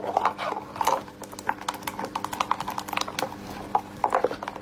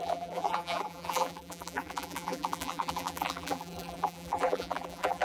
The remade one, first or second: second